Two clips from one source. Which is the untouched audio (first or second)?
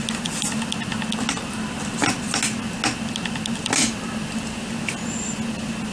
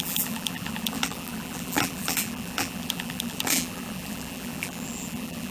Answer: first